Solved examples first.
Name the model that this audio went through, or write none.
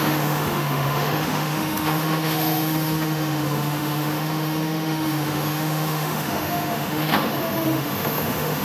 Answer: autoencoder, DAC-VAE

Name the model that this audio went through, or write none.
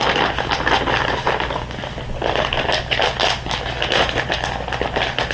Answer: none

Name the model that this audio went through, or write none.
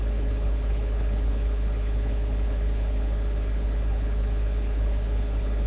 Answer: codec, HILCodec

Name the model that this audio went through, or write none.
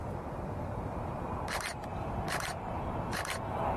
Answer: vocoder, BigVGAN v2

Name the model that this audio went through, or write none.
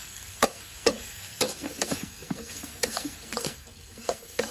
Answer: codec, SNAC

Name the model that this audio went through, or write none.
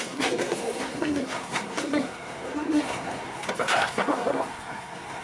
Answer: codec, SNAC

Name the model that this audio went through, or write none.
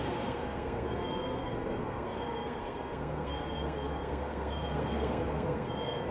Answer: codec, SNAC